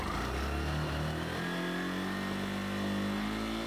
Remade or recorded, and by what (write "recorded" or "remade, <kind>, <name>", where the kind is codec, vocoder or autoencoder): recorded